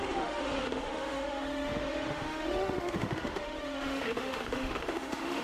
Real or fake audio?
fake